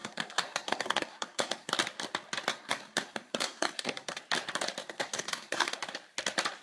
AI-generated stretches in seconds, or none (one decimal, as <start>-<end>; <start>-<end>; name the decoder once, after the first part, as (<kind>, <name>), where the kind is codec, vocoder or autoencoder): 0.0-1.7 (codec, SNAC); 2.5-4.2; 4.8-5.8